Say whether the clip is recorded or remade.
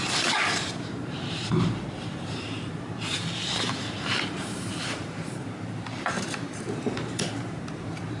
remade